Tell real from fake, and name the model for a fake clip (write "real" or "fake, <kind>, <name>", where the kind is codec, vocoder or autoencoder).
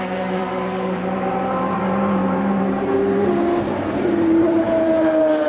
fake, vocoder, BigVGAN v2